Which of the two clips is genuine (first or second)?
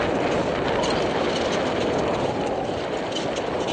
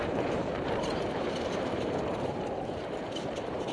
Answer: first